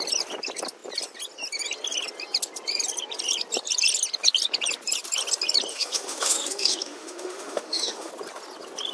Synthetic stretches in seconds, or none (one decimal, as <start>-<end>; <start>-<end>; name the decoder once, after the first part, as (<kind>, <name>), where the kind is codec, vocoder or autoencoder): 5.7-8.1 (autoencoder, DAC-VAE)